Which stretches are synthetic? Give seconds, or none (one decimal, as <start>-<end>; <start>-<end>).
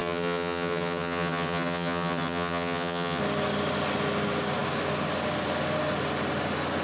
0.0-3.2